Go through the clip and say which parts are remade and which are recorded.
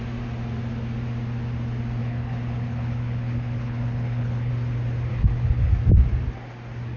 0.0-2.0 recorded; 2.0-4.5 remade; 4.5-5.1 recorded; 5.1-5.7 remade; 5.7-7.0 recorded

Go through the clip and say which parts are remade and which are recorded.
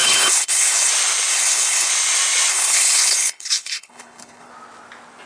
0.0-0.9 remade; 0.9-1.3 recorded; 1.3-1.9 remade; 1.9-2.5 recorded; 2.5-4.5 remade; 4.5-5.3 recorded